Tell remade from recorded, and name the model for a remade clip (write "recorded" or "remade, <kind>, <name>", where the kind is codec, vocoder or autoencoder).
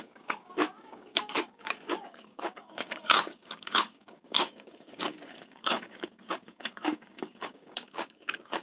remade, codec, DAC